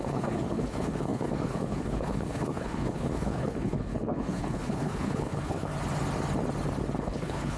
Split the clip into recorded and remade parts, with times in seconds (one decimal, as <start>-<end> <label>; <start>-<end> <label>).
0.0-5.7 remade; 5.7-7.0 recorded; 7.0-7.6 remade